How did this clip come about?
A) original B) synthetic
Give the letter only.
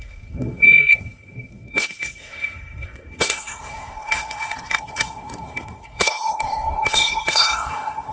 B